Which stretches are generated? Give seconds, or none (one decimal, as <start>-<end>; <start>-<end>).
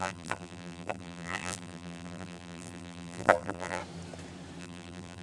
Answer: 0.0-3.8; 4.6-5.2